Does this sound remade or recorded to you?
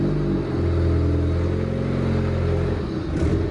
recorded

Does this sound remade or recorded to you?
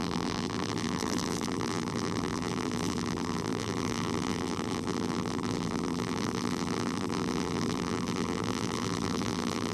remade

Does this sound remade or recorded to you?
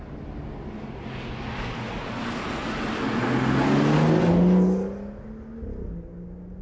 recorded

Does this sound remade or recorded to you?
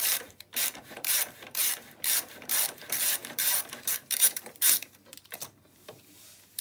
remade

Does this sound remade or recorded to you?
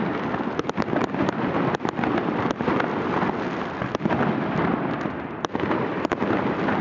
recorded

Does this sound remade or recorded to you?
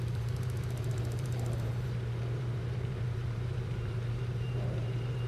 remade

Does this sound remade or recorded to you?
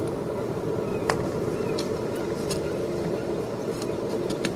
recorded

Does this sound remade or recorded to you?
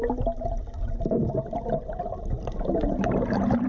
recorded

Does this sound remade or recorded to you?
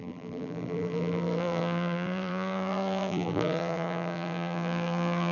remade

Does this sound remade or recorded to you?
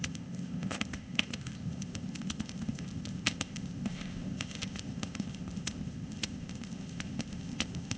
remade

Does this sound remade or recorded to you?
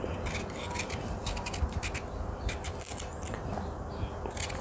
recorded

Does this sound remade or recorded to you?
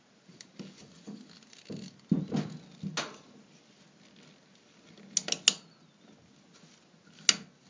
recorded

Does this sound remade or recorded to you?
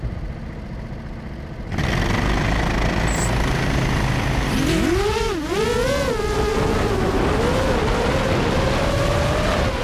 recorded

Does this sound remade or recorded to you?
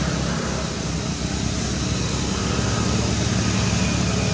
recorded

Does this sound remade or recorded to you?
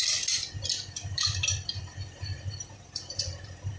recorded